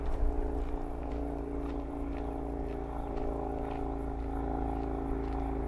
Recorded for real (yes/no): yes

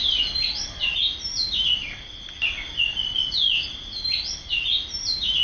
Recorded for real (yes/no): yes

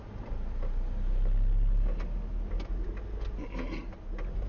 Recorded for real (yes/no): yes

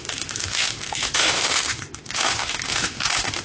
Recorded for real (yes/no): no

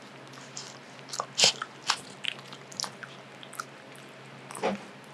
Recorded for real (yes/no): yes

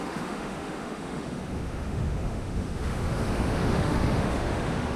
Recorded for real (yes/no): no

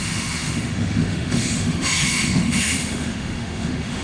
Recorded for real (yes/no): no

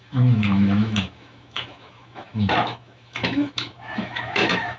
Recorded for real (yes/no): no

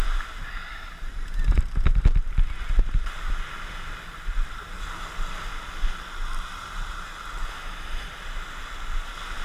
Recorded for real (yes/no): yes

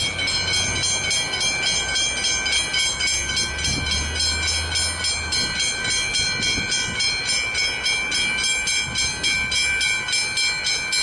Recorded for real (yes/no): yes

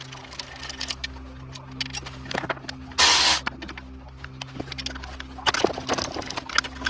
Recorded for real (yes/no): yes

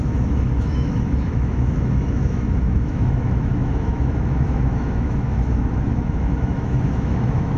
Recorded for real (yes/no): no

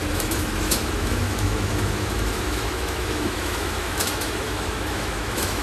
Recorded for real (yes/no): no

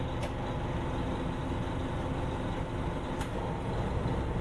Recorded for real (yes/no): yes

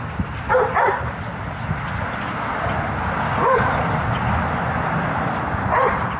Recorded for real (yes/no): yes